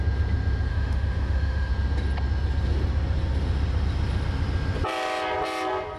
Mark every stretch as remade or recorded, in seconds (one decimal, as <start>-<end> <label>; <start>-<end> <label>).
0.0-0.7 recorded; 0.7-1.7 remade; 1.7-6.0 recorded